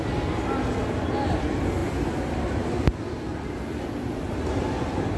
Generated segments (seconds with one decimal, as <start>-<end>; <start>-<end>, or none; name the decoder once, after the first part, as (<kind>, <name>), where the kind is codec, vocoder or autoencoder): none